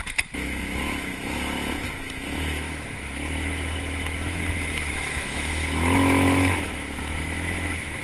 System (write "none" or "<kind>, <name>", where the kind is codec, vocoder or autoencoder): autoencoder, DAC-VAE